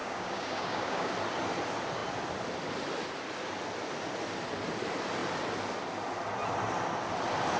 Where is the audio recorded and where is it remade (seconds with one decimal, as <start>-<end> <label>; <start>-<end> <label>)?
0.0-1.1 remade; 1.1-7.6 recorded

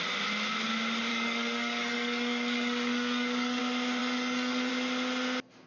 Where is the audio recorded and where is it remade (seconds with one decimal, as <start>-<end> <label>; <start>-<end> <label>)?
0.0-1.1 recorded; 1.1-3.6 remade; 3.6-4.0 recorded; 4.0-4.7 remade; 4.7-5.7 recorded

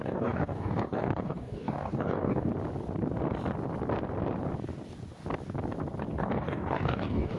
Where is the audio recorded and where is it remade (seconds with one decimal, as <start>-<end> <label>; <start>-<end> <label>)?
0.0-2.5 remade; 2.5-6.1 recorded; 6.1-7.4 remade